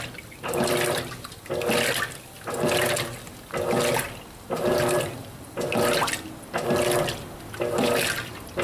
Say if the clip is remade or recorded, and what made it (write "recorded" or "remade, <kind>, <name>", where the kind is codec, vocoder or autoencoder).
recorded